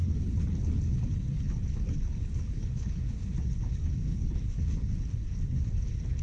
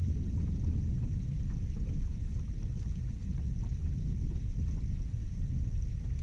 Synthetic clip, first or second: first